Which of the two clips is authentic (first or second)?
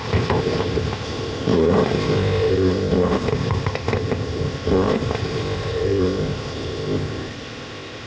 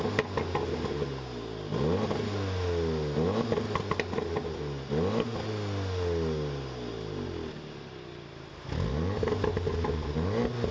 second